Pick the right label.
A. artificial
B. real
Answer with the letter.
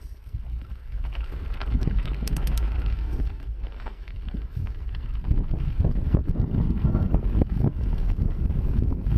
A